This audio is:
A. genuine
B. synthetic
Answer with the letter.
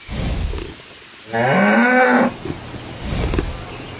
A